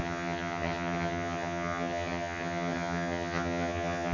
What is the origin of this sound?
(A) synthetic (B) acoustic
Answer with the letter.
A